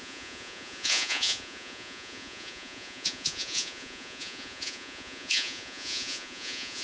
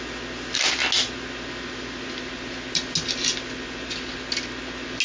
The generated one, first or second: first